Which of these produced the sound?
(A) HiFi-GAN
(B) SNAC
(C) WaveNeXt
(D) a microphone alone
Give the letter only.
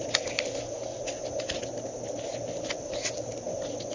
D